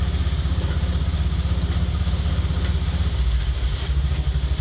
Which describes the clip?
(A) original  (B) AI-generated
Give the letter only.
A